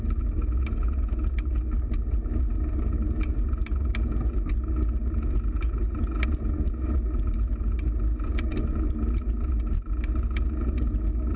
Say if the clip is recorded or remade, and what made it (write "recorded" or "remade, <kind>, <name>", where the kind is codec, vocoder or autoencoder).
recorded